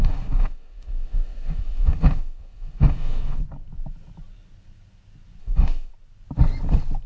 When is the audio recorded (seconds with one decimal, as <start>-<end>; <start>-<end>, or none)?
3.4-5.4; 5.9-7.1